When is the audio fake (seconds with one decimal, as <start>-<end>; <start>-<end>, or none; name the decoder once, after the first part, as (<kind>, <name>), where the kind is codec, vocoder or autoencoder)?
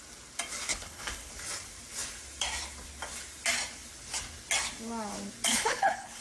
0.7-1.3 (codec, HILCodec); 5.5-6.2